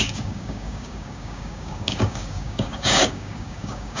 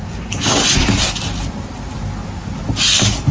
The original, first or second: second